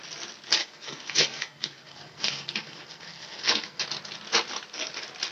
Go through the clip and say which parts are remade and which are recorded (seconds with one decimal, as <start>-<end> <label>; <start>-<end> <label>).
0.0-0.6 recorded; 0.6-3.8 remade; 3.8-5.3 recorded